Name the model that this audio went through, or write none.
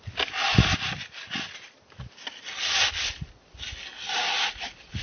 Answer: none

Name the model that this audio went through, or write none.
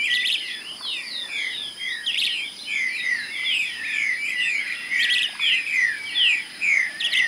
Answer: vocoder, BigVGAN v2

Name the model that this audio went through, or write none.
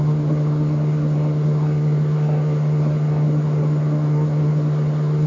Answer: codec, SNAC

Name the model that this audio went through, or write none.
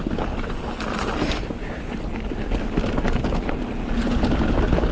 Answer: none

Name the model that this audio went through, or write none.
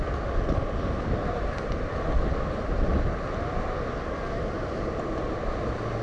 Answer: none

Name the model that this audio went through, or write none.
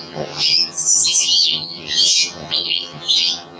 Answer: vocoder, HiFi-GAN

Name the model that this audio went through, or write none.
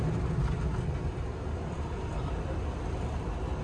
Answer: none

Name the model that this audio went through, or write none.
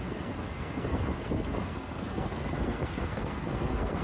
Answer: codec, SNAC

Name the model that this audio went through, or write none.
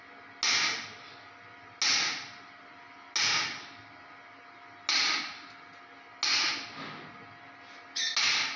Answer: none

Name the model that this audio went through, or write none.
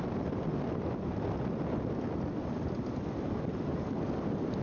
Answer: none